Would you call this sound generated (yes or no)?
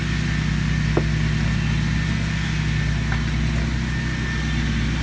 no